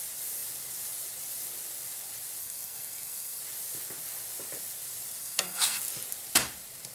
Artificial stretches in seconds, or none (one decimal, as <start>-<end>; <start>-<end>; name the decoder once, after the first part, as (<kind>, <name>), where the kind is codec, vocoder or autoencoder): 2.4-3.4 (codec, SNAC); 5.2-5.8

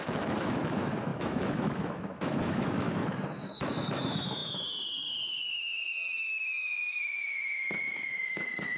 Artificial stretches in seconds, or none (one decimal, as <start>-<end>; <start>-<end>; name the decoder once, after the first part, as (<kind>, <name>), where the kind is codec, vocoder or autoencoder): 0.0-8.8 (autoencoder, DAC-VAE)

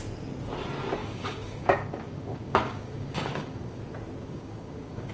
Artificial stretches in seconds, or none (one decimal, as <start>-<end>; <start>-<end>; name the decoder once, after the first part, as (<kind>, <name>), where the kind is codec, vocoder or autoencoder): 1.0-3.8 (codec, DAC); 4.2-5.1

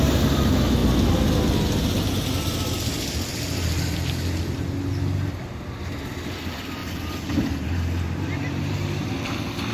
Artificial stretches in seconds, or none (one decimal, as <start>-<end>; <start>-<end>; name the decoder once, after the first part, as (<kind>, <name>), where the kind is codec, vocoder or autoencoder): 6.8-9.1 (vocoder, BigVGAN v2)